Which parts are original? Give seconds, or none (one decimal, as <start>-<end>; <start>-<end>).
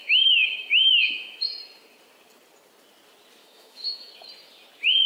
1.6-3.4; 4.1-5.1